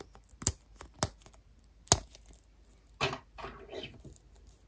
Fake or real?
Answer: real